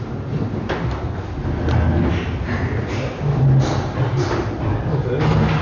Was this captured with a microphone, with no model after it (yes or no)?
yes